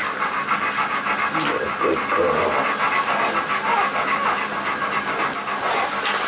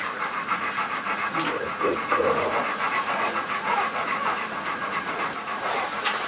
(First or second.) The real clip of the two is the first